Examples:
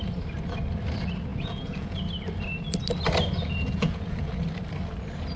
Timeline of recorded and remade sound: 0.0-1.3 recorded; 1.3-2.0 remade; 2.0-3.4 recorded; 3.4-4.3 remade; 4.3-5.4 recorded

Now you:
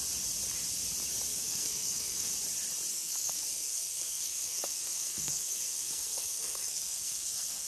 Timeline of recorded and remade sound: 0.0-1.3 recorded; 1.3-2.3 remade; 2.3-2.9 recorded; 2.9-7.7 remade